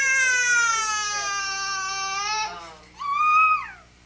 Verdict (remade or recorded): recorded